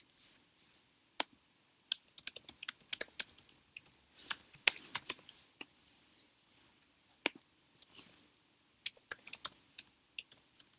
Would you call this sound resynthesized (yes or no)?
no